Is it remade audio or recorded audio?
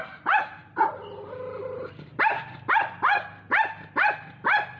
recorded